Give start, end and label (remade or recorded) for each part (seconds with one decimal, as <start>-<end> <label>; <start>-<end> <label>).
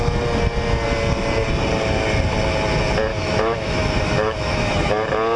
0.0-3.1 recorded; 3.1-4.9 remade; 4.9-5.4 recorded